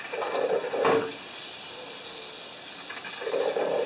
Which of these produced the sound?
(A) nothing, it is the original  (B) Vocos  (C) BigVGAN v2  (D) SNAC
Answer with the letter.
A